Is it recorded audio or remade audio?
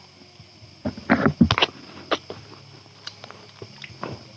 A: recorded